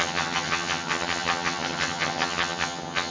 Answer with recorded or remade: remade